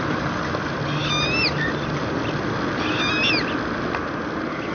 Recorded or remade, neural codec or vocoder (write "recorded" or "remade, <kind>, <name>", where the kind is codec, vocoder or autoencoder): recorded